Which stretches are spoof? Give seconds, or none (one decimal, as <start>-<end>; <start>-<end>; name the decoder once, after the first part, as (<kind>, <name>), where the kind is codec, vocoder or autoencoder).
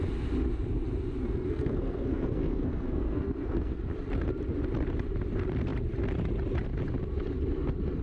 1.2-3.8 (codec, SNAC)